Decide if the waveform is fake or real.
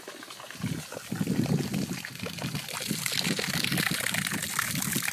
real